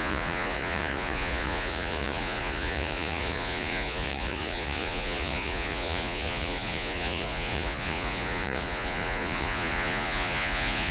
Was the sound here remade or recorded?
remade